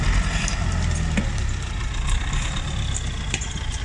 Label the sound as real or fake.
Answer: real